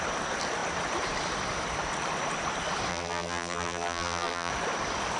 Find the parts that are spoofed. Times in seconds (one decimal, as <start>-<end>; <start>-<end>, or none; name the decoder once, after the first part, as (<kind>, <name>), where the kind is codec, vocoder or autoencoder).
2.9-4.5 (vocoder, BigVGAN v2)